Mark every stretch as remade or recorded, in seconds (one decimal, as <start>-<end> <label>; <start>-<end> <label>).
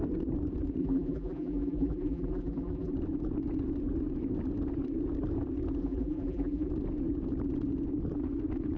0.0-0.8 recorded; 0.8-2.9 remade; 2.9-5.8 recorded; 5.8-6.7 remade; 6.7-8.8 recorded